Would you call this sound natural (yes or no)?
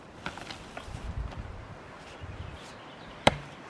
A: yes